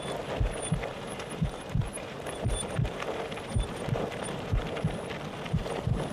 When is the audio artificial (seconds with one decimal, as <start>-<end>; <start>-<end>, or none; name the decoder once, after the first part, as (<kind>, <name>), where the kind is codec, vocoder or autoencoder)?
0.9-4.6 (vocoder, BigVGAN v2)